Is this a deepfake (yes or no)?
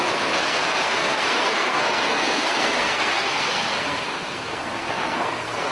yes